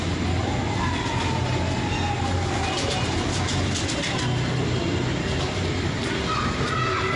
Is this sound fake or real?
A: real